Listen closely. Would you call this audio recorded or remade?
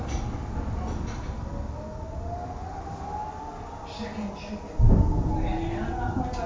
recorded